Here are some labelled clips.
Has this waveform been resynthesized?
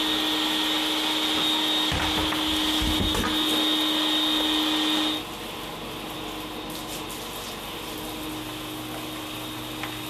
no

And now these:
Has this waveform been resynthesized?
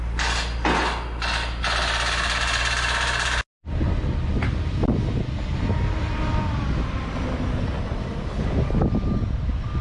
no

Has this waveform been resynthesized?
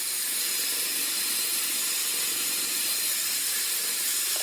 yes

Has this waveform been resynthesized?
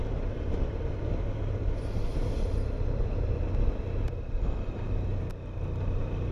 no